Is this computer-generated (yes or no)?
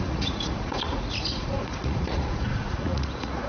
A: yes